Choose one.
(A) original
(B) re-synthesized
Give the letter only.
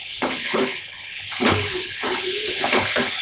B